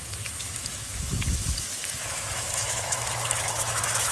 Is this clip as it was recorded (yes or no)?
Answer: no